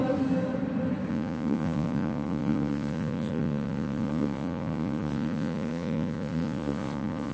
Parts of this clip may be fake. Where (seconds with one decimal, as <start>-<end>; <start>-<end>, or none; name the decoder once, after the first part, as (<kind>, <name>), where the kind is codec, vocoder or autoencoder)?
1.1-7.3 (vocoder, Vocos)

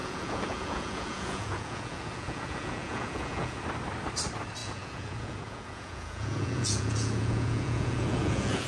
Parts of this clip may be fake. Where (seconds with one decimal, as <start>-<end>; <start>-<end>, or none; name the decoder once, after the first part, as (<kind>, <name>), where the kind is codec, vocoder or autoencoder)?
0.0-3.6 (vocoder, Vocos); 4.6-8.7